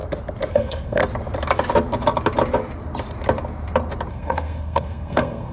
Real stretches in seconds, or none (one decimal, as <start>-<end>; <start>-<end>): 0.0-0.5; 1.0-4.1

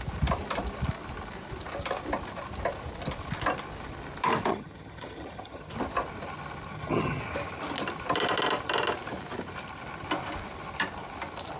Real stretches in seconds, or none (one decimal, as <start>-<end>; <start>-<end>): 0.0-4.5; 5.7-6.7; 7.2-11.6

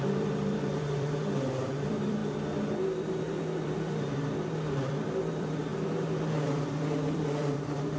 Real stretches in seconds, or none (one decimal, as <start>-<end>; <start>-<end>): 2.2-3.1

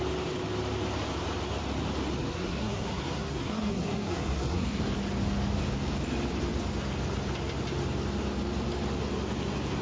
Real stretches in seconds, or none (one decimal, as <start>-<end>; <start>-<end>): 0.0-2.2; 4.9-9.8

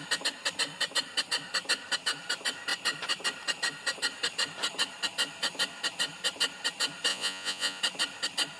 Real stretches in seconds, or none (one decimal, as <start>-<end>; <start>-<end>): 0.0-7.1; 7.8-8.6

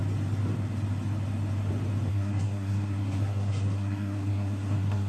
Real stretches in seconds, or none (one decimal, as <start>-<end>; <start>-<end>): 0.0-2.1

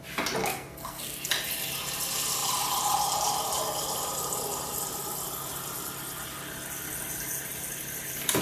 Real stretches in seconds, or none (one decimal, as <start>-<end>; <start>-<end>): 0.0-0.4; 1.3-8.4